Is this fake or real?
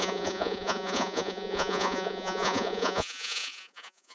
fake